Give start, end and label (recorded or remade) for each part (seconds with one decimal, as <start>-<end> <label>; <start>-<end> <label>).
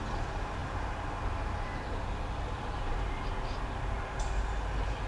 0.0-5.1 recorded